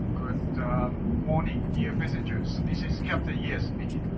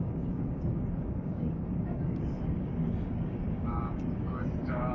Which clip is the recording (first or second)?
first